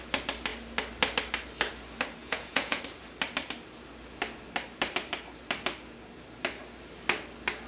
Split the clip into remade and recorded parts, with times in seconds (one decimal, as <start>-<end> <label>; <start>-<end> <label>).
0.0-2.2 recorded; 2.2-2.8 remade; 2.8-7.7 recorded